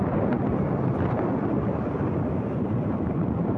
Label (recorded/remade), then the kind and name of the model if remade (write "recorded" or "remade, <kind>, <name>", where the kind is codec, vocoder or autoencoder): recorded